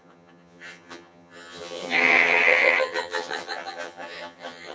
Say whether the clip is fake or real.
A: fake